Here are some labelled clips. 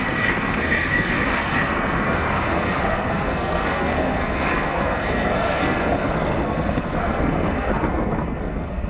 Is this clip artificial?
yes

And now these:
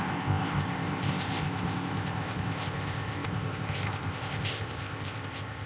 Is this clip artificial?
yes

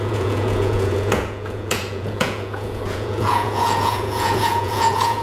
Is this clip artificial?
yes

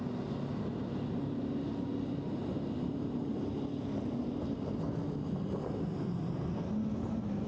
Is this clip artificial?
no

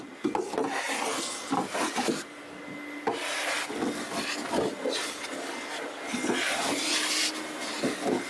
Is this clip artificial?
no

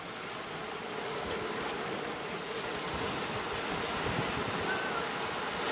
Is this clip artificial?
no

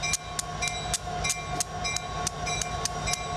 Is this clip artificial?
no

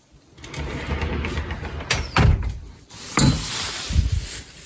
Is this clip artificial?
no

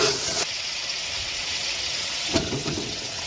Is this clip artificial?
yes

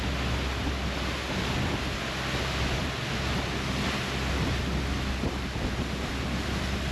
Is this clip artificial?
no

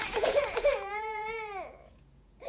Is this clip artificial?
yes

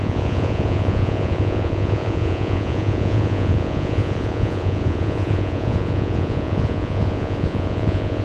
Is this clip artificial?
yes